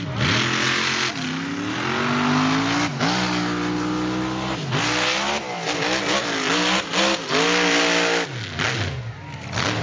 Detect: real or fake real